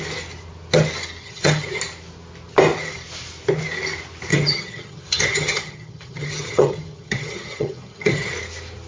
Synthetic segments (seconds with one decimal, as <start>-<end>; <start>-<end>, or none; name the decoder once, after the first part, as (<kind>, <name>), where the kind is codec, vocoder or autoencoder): 1.2-1.8 (vocoder, HiFi-GAN); 4.3-8.3